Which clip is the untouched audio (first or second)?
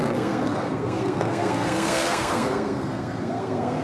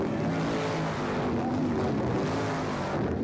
second